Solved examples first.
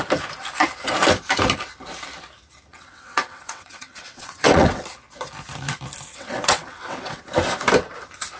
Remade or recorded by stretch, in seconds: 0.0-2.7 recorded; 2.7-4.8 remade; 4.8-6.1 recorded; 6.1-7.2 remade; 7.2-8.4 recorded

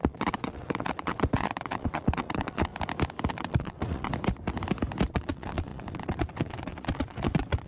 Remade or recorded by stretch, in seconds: 0.0-2.7 remade; 2.7-3.3 recorded; 3.3-4.1 remade; 4.1-5.1 recorded; 5.1-7.7 remade